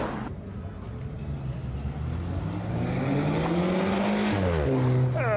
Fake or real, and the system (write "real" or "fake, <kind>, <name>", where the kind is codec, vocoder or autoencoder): real